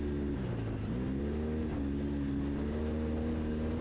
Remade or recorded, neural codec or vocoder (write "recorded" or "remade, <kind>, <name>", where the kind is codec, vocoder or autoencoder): recorded